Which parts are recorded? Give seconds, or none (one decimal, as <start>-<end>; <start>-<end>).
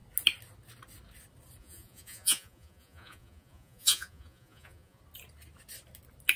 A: 0.0-1.6; 5.0-6.4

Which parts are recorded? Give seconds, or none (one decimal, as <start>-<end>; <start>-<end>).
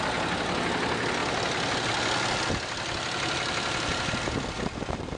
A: 0.0-5.2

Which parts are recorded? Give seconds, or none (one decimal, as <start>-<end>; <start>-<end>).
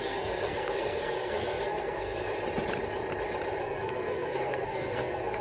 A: 2.2-3.6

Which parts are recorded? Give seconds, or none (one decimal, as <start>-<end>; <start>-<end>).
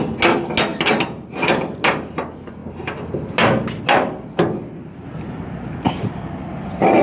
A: 0.0-7.0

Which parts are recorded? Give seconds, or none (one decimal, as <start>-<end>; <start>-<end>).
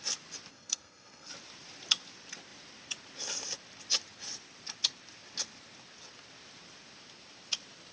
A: 0.0-0.5; 1.3-7.9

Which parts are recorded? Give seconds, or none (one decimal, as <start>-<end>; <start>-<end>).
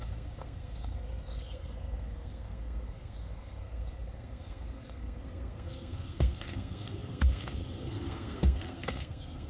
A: none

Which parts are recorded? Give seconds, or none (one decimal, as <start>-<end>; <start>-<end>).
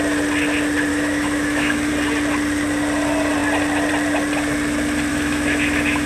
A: 0.0-0.9; 1.9-5.1